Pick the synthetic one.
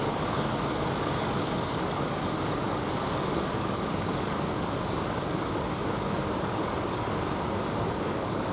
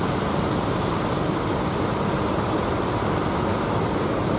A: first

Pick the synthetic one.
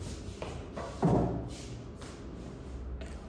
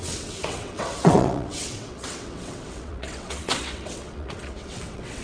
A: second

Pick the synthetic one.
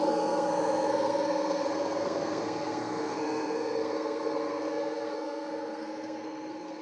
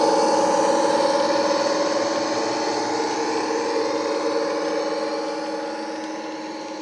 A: first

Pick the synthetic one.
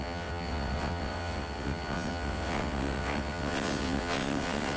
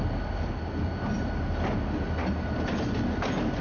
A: first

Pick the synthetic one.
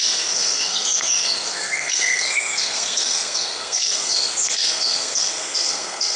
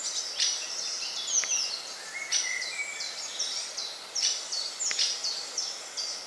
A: first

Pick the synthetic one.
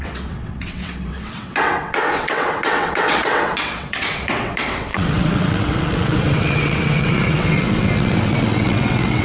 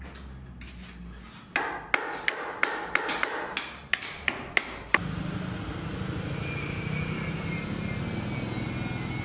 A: first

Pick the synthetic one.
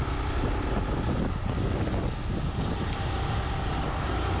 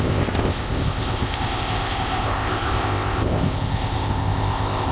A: second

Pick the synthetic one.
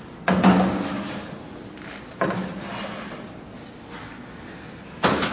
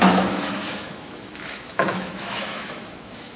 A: second